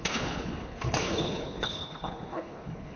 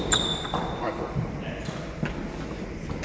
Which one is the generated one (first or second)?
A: first